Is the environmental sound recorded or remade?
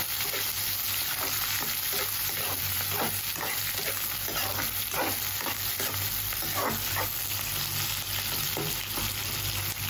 recorded